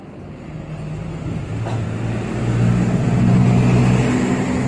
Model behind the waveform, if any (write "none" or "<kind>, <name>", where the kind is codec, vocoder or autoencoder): none